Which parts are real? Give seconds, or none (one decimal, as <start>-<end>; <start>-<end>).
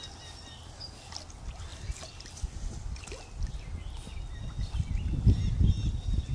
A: 0.0-1.7; 2.4-6.3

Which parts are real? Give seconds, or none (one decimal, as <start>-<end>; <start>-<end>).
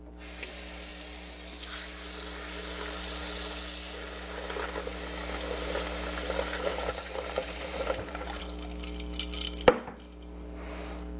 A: 0.0-6.7; 8.4-11.2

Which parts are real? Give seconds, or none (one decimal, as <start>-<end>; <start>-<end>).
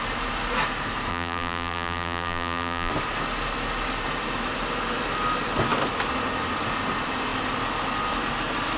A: 0.0-1.1; 2.9-8.8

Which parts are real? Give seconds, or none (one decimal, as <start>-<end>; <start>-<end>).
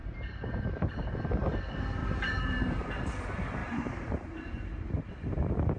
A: 0.9-2.0; 3.2-3.6; 5.1-5.8